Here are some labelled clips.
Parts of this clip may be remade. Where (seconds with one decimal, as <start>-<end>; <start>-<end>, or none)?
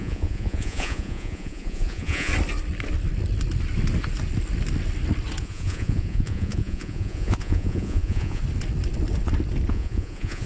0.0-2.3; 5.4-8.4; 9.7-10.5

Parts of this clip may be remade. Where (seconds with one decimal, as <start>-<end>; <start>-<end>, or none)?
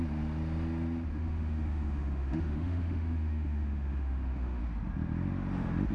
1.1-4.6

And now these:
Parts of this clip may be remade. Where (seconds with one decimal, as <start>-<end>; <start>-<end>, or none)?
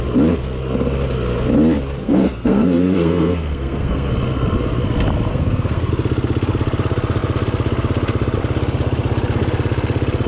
2.0-4.1; 5.3-5.9